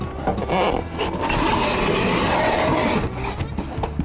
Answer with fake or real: real